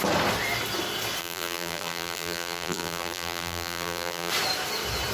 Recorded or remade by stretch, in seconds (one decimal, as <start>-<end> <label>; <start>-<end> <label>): 0.0-1.2 recorded; 1.2-4.3 remade; 4.3-5.1 recorded